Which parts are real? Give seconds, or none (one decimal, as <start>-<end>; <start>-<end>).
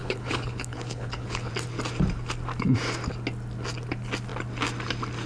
1.5-5.3